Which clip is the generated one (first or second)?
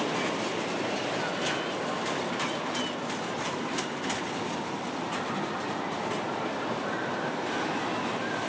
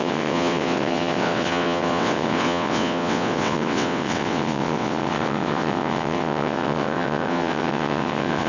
second